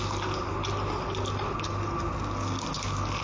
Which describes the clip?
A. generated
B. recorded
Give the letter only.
B